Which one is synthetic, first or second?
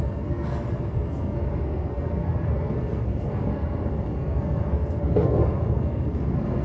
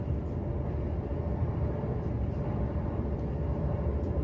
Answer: first